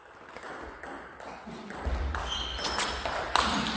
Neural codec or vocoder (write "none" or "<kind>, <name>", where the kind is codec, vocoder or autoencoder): none